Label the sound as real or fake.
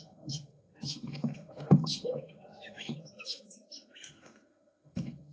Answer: fake